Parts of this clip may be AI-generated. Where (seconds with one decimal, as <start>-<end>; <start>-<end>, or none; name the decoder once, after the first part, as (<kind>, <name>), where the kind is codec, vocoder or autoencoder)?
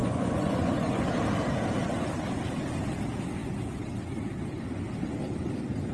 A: 0.0-1.1 (vocoder, Vocos)